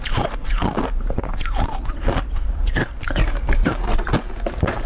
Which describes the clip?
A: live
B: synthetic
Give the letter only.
B